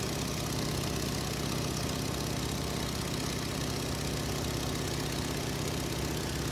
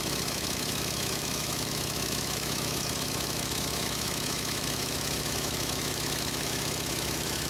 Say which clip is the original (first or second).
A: first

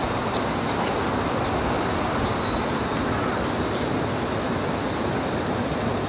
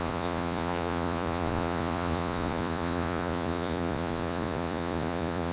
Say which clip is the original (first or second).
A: first